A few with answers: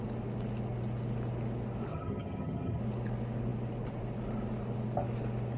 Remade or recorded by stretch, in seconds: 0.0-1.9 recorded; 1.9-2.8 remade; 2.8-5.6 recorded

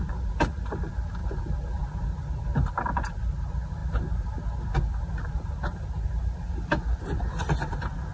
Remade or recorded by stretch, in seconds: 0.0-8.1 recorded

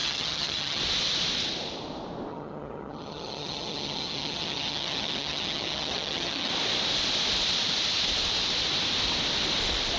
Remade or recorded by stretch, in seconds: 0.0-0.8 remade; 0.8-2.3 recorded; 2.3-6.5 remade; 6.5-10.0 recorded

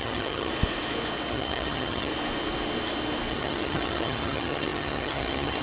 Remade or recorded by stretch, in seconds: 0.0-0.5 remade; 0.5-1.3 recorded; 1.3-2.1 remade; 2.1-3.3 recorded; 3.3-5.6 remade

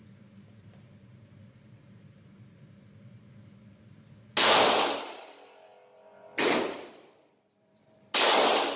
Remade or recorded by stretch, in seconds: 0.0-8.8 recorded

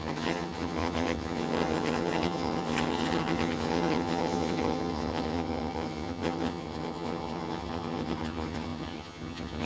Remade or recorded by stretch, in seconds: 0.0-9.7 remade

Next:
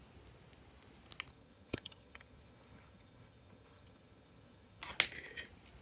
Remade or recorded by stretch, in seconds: 0.0-1.3 recorded; 1.3-4.8 remade; 4.8-5.8 recorded